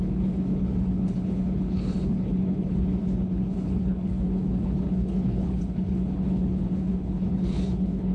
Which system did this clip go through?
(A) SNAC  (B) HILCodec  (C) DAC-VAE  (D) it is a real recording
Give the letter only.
B